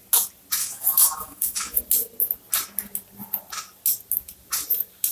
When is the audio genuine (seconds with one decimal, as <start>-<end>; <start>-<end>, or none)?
0.0-0.6; 1.8-5.1